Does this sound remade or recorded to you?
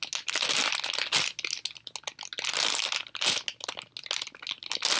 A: recorded